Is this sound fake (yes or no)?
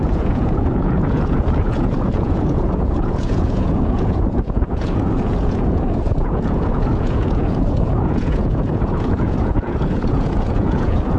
yes